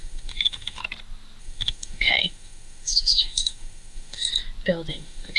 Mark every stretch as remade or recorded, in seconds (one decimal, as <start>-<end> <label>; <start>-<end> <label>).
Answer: 0.0-0.8 remade; 0.8-1.4 recorded; 1.4-4.3 remade; 4.3-4.9 recorded; 4.9-5.4 remade